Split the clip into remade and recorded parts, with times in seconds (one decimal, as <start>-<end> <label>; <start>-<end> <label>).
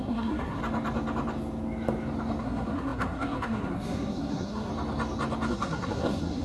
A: 0.0-0.6 remade; 0.6-2.4 recorded; 2.4-4.7 remade; 4.7-5.5 recorded; 5.5-6.4 remade